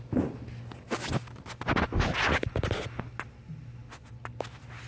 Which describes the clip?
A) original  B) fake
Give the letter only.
A